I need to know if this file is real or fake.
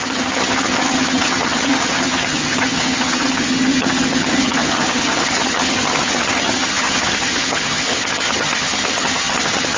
fake